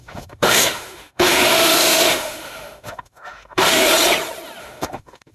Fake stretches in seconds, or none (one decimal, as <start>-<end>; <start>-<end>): 0.0-3.8; 4.6-5.3